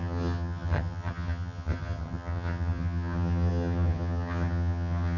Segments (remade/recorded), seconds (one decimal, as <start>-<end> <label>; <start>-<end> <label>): 0.0-5.2 remade